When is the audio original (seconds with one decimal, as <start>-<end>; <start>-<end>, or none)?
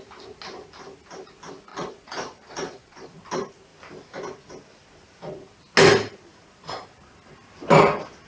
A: 0.0-1.7; 3.1-8.3